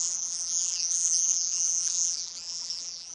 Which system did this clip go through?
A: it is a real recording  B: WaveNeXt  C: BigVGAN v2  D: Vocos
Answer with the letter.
C